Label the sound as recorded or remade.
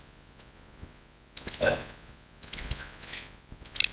recorded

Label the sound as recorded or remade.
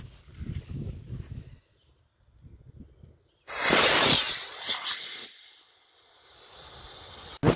recorded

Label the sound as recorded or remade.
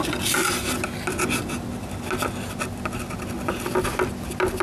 recorded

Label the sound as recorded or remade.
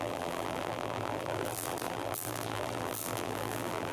remade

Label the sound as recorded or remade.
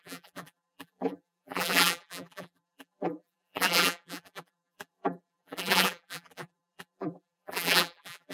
remade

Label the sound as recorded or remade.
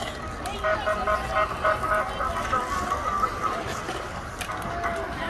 recorded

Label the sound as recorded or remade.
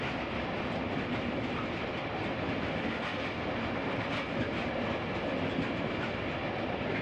recorded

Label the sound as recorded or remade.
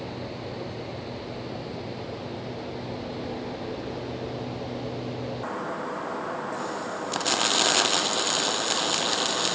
recorded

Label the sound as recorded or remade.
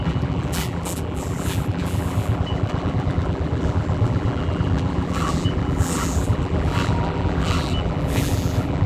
remade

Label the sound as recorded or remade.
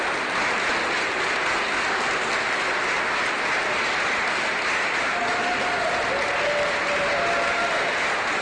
recorded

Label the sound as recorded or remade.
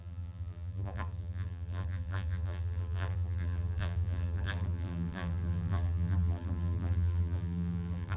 remade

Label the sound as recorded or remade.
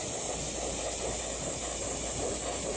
remade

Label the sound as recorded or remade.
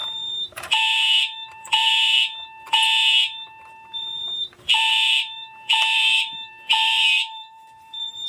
remade